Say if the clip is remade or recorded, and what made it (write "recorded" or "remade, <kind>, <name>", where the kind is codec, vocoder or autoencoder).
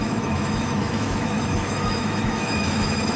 remade, autoencoder, DAC-VAE